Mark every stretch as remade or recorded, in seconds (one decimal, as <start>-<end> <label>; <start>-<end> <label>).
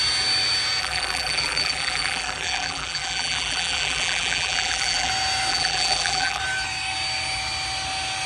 0.0-0.8 recorded; 0.8-5.1 remade; 5.1-5.5 recorded; 5.5-6.4 remade; 6.4-8.3 recorded